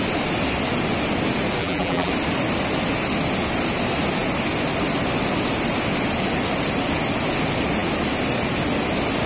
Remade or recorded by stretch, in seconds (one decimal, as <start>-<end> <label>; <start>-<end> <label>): 0.0-1.6 recorded; 1.6-2.1 remade; 2.1-9.3 recorded